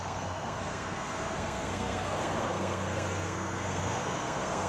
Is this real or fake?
fake